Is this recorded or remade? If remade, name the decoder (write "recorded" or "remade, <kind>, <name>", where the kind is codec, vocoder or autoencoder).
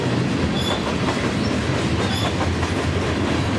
remade, vocoder, BigVGAN v2